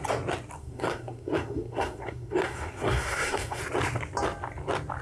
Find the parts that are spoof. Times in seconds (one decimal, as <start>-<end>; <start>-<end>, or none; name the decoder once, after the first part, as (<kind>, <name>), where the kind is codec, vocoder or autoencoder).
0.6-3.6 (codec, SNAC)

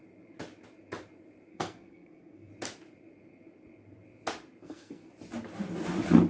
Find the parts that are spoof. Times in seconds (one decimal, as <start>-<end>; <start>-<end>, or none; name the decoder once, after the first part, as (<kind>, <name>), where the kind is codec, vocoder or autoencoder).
1.5-2.5 (codec, SNAC); 4.6-5.1

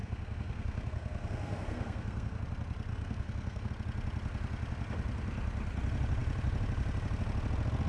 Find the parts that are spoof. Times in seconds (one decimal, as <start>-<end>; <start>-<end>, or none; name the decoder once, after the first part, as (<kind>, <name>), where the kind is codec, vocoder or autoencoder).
0.0-2.4 (codec, SNAC); 2.9-3.7